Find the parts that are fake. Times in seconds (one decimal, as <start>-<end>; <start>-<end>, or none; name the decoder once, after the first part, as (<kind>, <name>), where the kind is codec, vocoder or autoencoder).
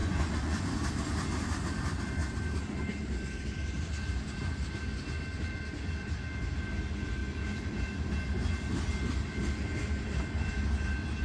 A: 0.0-0.7 (vocoder, Vocos)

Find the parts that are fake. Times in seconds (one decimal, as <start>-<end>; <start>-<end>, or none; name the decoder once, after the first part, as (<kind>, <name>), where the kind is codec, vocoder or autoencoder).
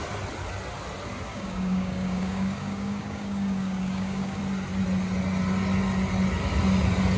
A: 1.3-4.4 (codec, DAC)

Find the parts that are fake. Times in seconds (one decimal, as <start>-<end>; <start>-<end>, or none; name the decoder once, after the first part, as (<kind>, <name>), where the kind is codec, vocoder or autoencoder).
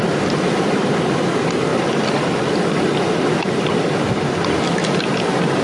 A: 1.7-3.3 (vocoder, BigVGAN v2)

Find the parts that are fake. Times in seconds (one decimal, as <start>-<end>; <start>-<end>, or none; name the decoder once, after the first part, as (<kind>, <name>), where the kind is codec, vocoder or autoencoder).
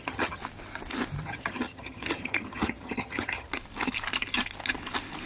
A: 0.0-0.4 (vocoder, HiFi-GAN); 1.2-3.5